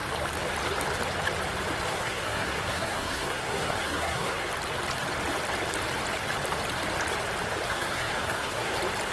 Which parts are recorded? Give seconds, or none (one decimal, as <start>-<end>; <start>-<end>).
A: 0.0-1.9; 4.5-7.7; 8.7-9.1